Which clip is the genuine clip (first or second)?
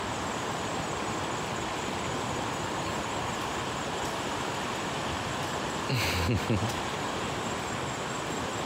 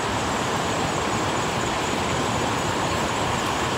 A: first